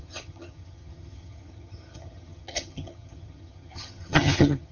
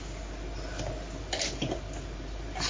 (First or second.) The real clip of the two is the second